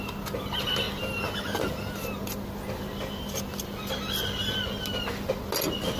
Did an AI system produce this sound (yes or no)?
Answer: no